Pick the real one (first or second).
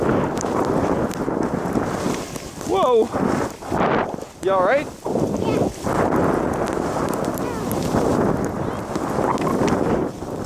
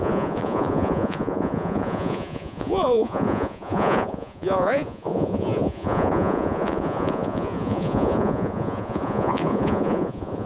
first